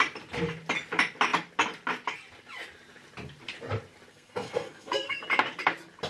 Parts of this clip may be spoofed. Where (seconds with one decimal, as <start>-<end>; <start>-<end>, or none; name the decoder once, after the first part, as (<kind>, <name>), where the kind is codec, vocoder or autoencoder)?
4.1-5.2 (codec, SNAC)